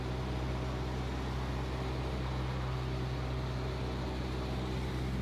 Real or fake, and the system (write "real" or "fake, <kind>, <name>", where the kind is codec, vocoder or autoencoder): real